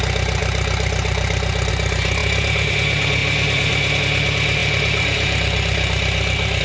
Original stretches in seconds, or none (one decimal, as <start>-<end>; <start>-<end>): 0.0-0.4; 1.7-3.2; 4.0-4.6